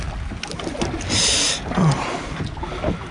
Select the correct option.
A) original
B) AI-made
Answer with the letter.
A